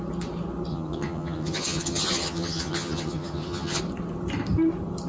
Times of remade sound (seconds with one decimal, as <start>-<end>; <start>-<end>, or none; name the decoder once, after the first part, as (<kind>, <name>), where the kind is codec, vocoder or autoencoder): 0.7-3.8 (vocoder, HiFi-GAN)